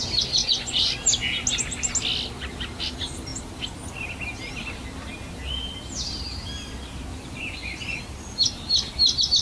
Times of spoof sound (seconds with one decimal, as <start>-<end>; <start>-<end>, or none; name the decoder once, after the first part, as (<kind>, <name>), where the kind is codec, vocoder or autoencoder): 0.4-0.9 (vocoder, Vocos); 7.1-8.0